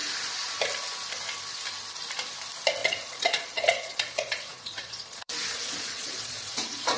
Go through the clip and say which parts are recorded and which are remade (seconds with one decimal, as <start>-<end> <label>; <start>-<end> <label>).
0.0-2.8 recorded; 2.8-7.0 remade